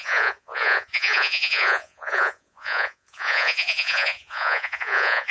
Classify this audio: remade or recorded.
remade